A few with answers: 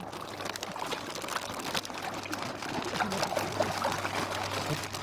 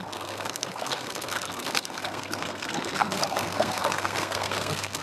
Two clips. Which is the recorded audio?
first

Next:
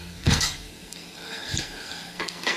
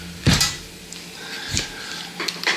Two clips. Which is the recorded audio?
second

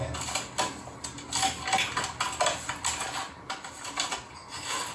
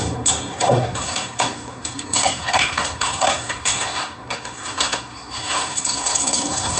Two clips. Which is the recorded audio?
first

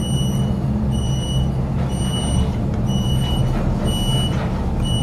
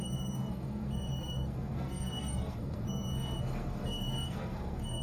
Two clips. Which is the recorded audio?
first